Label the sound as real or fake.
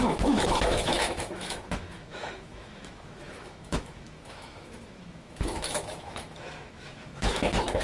fake